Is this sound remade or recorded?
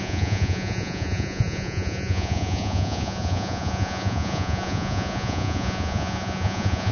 remade